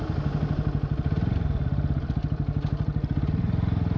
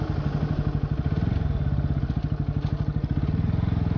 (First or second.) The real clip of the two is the second